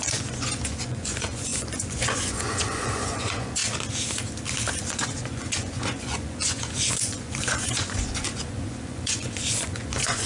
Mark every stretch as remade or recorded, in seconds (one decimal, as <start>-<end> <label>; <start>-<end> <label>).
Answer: 0.0-3.6 remade; 3.6-4.7 recorded; 4.7-10.3 remade